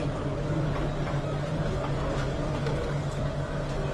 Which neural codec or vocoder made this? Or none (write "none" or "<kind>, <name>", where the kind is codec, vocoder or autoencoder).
none